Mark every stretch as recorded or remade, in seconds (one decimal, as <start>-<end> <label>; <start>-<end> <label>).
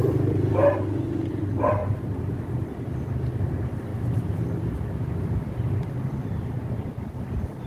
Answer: 0.0-0.6 remade; 0.6-1.3 recorded; 1.3-3.9 remade; 3.9-4.8 recorded; 4.8-7.7 remade